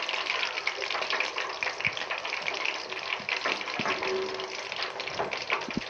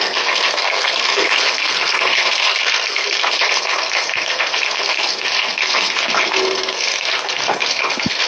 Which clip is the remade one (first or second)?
second